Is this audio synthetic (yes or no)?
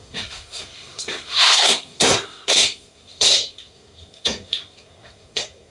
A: yes